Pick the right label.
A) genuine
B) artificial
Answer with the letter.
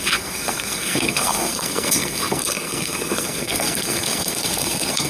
B